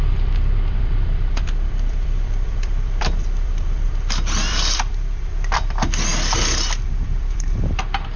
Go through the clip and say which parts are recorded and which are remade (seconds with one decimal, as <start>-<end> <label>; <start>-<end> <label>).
0.0-6.1 remade; 6.1-6.9 recorded; 6.9-8.2 remade